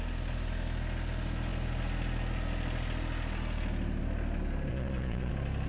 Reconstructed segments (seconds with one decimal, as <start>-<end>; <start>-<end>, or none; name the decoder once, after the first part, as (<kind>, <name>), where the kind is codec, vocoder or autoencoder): 4.7-5.3 (vocoder, Vocos)